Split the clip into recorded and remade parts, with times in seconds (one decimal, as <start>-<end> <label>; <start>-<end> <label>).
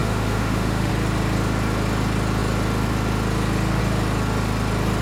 0.0-0.9 remade; 0.9-5.0 recorded